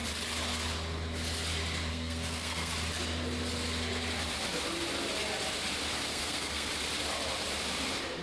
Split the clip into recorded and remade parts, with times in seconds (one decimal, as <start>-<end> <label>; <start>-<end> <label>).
0.0-1.9 recorded; 1.9-2.7 remade; 2.7-6.1 recorded; 6.1-6.7 remade; 6.7-8.2 recorded